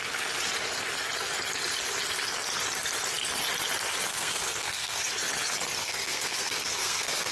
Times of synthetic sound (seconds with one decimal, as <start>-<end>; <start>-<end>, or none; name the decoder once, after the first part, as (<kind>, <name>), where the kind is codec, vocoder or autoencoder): 4.1-5.1 (codec, SNAC); 5.8-7.3